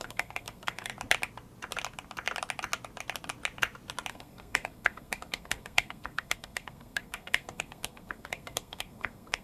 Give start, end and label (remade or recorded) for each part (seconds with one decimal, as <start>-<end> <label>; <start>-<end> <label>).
0.0-0.9 remade; 0.9-4.1 recorded; 4.1-9.4 remade